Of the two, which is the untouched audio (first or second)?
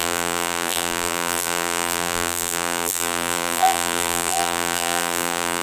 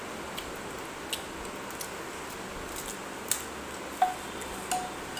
second